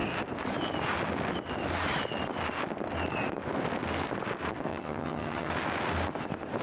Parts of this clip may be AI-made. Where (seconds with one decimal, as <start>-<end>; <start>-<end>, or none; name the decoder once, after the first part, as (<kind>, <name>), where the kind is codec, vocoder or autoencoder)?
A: 4.7-5.5 (vocoder, HiFi-GAN)